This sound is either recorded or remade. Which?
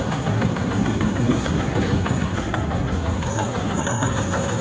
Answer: remade